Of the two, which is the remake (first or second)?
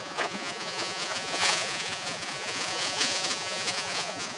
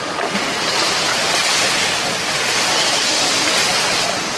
first